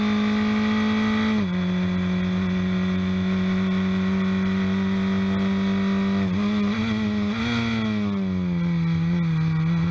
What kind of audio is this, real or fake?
real